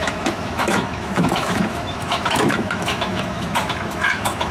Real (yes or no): no